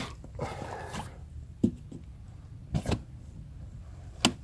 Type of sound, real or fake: real